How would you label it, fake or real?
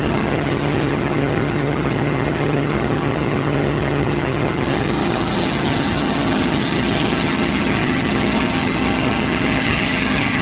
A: fake